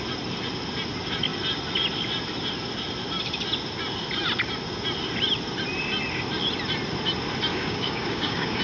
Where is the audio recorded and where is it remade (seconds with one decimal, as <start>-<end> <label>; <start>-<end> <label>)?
0.0-7.5 recorded; 7.5-8.6 remade